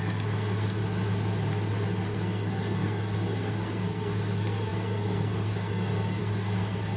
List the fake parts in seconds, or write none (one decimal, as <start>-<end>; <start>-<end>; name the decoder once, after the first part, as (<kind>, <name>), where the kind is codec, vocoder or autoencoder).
0.0-0.8 (codec, SNAC); 2.0-7.0